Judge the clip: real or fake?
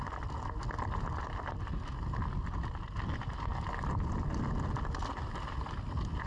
real